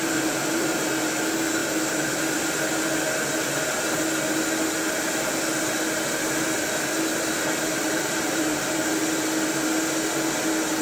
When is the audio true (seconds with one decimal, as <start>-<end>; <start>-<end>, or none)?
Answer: 0.9-1.6; 2.2-7.1; 8.9-10.8